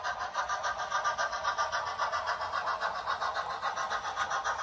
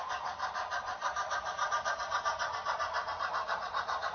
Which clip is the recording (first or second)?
first